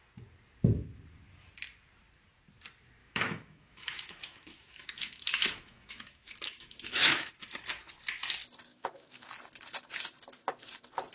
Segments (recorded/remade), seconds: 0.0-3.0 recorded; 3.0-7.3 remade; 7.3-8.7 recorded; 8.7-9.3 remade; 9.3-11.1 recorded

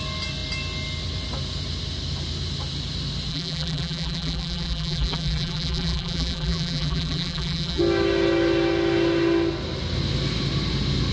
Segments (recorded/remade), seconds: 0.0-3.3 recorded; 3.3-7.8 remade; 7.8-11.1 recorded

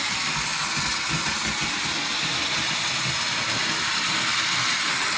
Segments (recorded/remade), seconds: 0.0-5.2 recorded

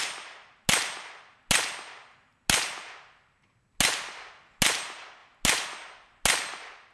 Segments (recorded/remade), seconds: 0.0-6.9 recorded